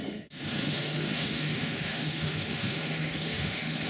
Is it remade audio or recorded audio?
remade